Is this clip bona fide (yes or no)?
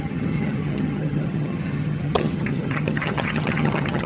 no